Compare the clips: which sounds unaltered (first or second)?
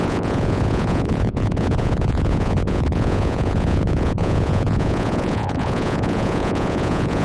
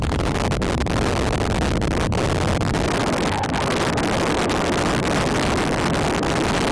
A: second